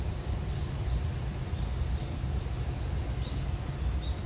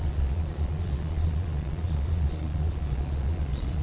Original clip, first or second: first